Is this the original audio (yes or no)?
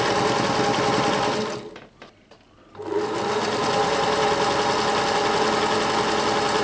yes